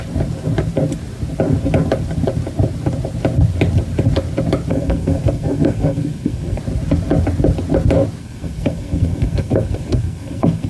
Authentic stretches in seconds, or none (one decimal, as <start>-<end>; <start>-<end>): 0.0-4.7; 6.6-8.2